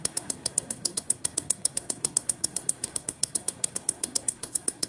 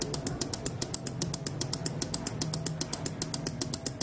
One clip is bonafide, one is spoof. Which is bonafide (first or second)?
second